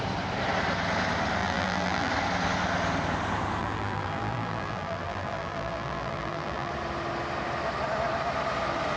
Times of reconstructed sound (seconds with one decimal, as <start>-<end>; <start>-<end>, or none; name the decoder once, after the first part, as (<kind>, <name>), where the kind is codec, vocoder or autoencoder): 1.4-2.1 (vocoder, BigVGAN v2); 3.6-6.7